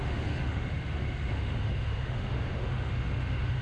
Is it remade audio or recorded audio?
remade